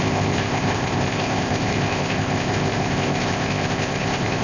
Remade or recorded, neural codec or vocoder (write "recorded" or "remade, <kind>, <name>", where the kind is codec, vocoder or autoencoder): remade, codec, ZipCodec